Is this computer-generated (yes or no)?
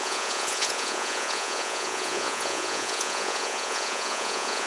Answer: yes